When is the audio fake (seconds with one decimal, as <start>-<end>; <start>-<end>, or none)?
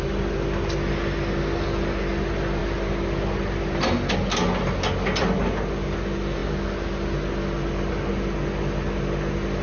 none